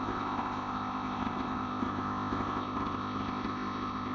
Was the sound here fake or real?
fake